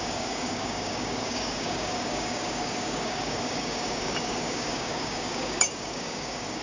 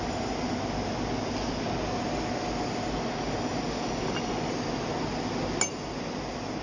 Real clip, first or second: second